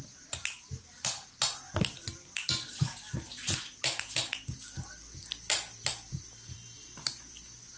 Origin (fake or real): real